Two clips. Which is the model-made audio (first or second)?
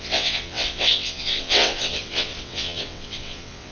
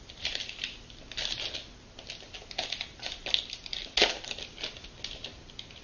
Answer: first